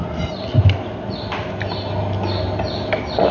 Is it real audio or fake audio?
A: real